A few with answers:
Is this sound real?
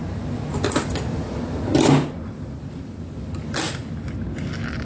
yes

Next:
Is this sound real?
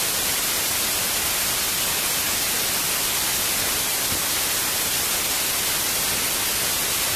yes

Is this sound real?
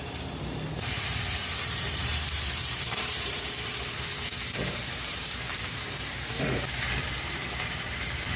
no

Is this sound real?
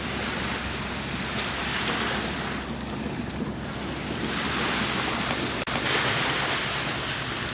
yes